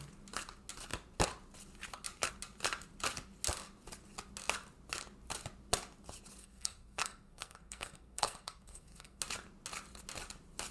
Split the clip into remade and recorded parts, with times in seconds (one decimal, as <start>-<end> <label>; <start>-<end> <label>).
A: 0.0-6.4 recorded; 6.4-9.2 remade; 9.2-10.7 recorded